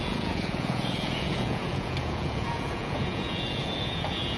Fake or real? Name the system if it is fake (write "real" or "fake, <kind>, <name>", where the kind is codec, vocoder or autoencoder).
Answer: fake, vocoder, Vocos